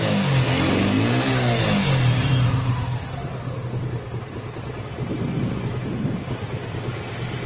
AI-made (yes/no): no